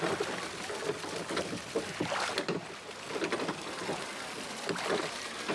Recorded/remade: recorded